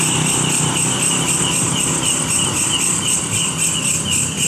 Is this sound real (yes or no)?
yes